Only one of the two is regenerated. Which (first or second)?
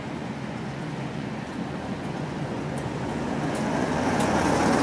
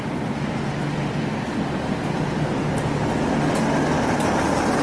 first